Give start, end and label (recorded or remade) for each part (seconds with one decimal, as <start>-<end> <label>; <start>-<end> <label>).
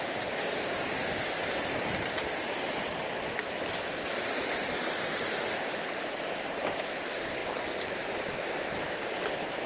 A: 0.0-9.7 remade